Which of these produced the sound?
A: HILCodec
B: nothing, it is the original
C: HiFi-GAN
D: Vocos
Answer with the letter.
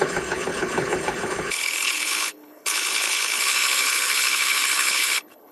A